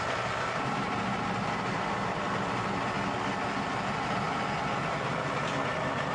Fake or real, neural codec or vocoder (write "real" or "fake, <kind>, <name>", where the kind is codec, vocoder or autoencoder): real